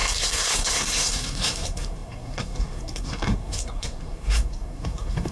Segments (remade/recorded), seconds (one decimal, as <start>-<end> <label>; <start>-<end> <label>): 0.0-5.3 remade